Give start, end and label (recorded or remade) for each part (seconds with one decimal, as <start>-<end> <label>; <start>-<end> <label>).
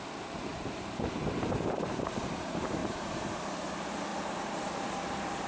0.0-0.5 recorded; 0.5-2.3 remade; 2.3-2.8 recorded; 2.8-3.4 remade; 3.4-4.1 recorded; 4.1-5.5 remade